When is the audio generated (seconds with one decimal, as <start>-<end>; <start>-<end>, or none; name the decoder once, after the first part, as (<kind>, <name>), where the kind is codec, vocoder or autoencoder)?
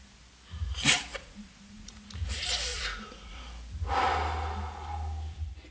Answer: 1.1-2.2 (vocoder, Vocos); 2.7-3.4